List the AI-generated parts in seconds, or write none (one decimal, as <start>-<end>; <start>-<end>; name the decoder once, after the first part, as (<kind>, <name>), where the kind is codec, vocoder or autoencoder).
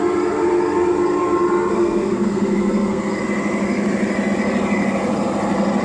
1.7-3.0 (codec, SNAC)